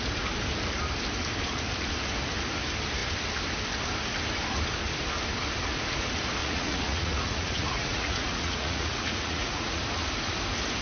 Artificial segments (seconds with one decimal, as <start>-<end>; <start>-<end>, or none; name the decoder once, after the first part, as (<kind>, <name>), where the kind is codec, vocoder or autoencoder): 6.4-9.8 (vocoder, Vocos)